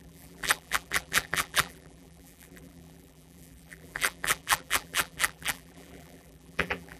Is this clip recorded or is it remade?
remade